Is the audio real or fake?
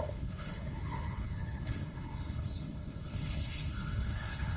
fake